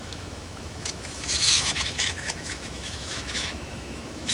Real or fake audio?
fake